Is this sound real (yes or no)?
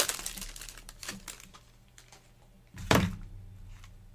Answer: yes